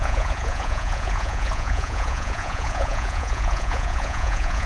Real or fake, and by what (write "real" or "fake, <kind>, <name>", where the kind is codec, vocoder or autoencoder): fake, vocoder, Vocos